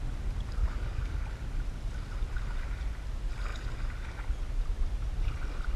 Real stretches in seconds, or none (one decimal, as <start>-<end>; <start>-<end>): 0.0-0.6; 1.3-5.8